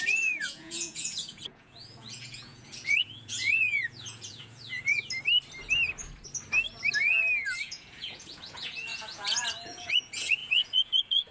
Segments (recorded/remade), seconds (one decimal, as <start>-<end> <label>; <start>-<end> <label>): 0.0-4.9 remade; 4.9-7.6 recorded; 7.6-11.3 remade